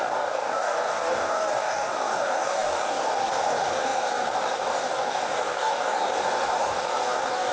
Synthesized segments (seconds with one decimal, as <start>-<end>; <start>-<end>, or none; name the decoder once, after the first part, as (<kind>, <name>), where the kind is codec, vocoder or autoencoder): 0.0-7.5 (codec, DAC)